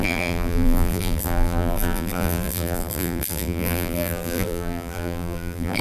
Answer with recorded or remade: remade